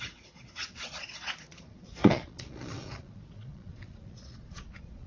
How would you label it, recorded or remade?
remade